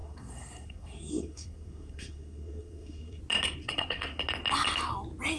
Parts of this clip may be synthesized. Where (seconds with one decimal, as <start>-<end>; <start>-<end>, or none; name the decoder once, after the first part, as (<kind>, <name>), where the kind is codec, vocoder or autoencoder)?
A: 0.0-3.2 (codec, SNAC); 3.6-4.2